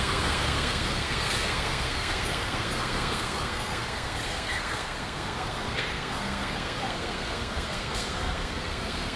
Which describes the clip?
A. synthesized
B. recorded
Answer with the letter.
A